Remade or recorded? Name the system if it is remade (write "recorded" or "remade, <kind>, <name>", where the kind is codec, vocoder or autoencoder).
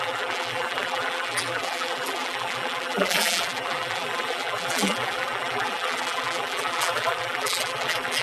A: remade, vocoder, BigVGAN v2